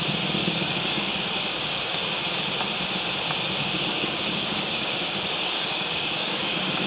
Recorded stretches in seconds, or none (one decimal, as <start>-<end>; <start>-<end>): 0.0-0.4; 2.0-3.6